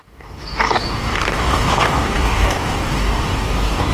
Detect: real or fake fake